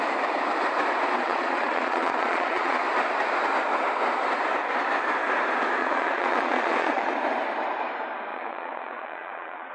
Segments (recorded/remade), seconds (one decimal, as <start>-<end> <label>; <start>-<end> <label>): 0.0-1.2 recorded; 1.2-2.8 remade; 2.8-5.8 recorded; 5.8-7.1 remade; 7.1-8.3 recorded; 8.3-9.7 remade